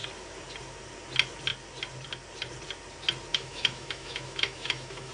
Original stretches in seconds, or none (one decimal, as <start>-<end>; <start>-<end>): 0.0-3.3